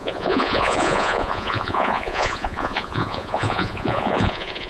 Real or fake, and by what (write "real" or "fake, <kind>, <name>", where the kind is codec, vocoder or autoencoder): fake, vocoder, Vocos